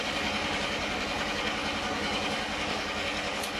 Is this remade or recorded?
remade